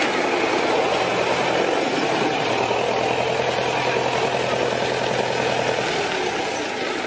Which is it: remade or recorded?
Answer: recorded